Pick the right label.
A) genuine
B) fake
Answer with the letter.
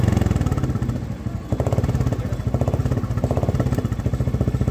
A